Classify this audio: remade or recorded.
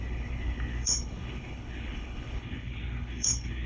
remade